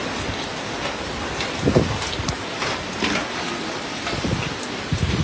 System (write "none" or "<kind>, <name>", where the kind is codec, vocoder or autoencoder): none